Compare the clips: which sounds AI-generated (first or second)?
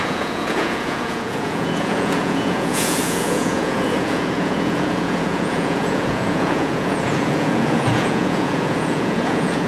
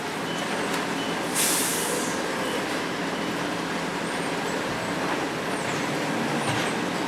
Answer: first